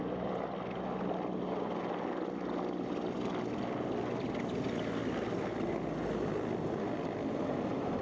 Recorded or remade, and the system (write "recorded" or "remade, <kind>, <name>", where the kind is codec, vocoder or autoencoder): recorded